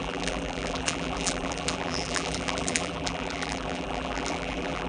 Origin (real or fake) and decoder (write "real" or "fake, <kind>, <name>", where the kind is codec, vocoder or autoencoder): fake, vocoder, BigVGAN v2